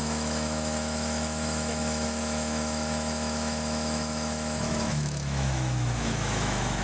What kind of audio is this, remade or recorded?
remade